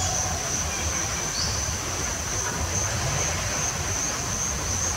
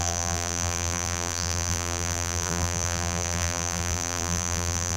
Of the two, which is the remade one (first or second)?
second